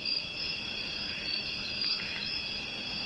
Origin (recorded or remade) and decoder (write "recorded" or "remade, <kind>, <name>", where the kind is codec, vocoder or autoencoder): remade, autoencoder, DAC-VAE